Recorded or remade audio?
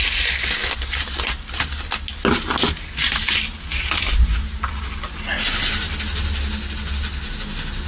recorded